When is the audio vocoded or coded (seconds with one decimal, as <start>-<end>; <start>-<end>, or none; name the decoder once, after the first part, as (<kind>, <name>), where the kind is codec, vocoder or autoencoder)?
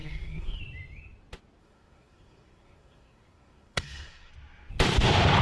0.0-0.6 (codec, SNAC); 1.6-4.3